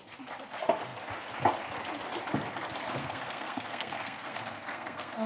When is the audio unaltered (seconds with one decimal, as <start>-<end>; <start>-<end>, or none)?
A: 0.0-3.0